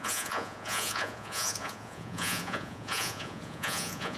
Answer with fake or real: fake